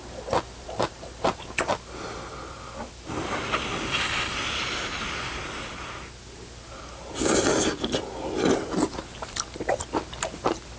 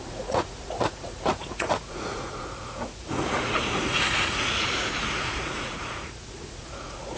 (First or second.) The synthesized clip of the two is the second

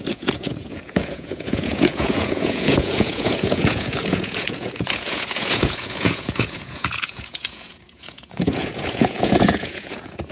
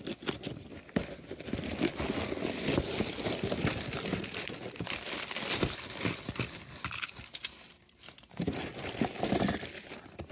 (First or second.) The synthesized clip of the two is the first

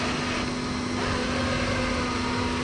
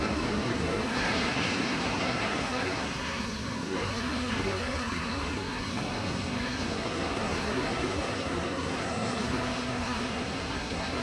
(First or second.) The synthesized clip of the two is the second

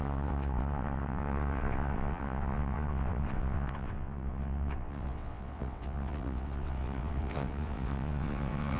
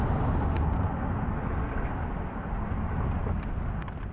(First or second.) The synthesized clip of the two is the first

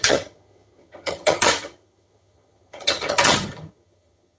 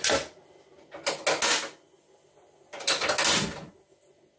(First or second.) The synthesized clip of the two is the first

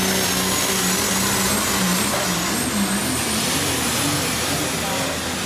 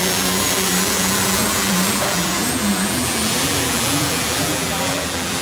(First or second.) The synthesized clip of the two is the second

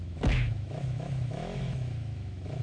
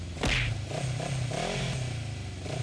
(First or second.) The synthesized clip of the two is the first